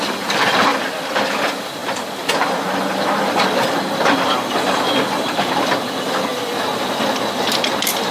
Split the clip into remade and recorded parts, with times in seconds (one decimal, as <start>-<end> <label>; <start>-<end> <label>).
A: 0.0-1.8 remade; 1.8-5.2 recorded; 5.2-8.1 remade